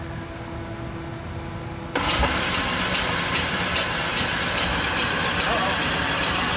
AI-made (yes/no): no